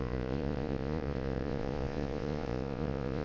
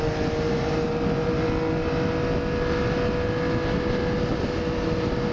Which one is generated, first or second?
first